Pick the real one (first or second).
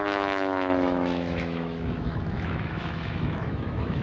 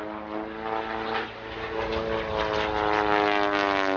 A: second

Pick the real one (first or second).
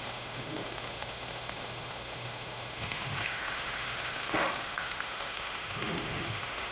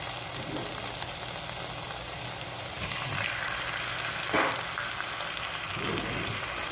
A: second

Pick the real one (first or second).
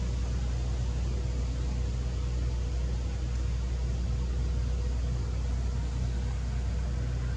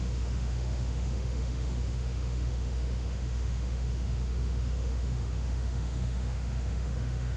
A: first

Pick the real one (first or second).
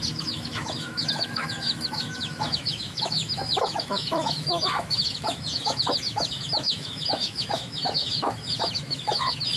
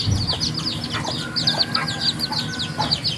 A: second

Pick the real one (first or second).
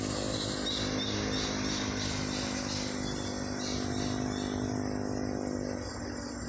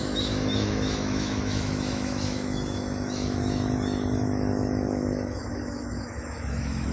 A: first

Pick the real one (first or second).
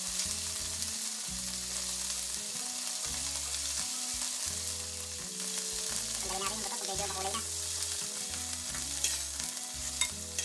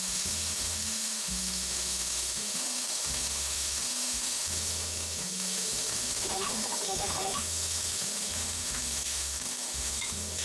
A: first